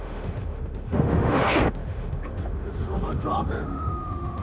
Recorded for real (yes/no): no